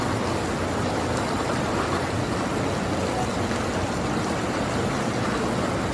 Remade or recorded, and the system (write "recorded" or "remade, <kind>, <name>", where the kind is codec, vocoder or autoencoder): recorded